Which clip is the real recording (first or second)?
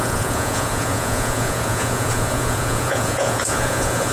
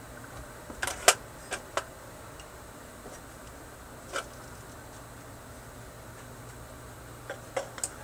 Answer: second